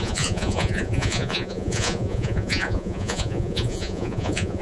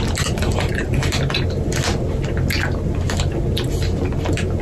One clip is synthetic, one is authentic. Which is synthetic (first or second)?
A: first